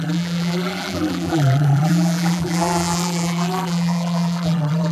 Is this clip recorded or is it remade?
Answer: remade